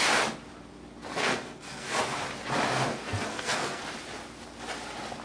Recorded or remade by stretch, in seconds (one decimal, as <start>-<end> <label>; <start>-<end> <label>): 0.0-1.1 recorded; 1.1-2.0 remade; 2.0-2.9 recorded; 2.9-3.8 remade; 3.8-5.2 recorded